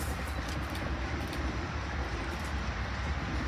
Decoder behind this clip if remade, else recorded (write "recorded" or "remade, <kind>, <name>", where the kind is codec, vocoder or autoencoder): recorded